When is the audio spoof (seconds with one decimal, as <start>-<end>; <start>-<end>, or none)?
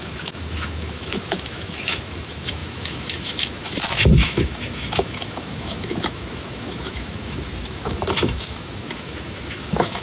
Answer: 0.0-10.0